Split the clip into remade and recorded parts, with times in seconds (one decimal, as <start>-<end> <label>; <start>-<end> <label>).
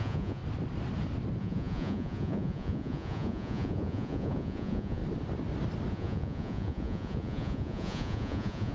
0.0-0.4 remade; 0.4-1.4 recorded; 1.4-5.0 remade; 5.0-5.9 recorded; 5.9-8.7 remade